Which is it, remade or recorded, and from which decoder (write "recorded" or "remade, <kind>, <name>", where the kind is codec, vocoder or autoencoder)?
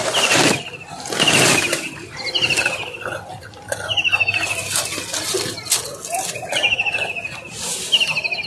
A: recorded